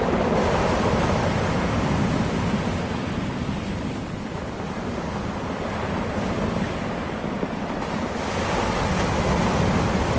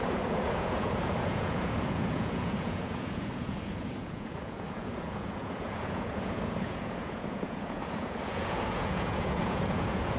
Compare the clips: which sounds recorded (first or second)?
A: first